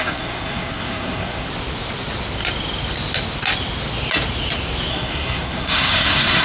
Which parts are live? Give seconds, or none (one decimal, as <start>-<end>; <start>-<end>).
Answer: 1.5-4.9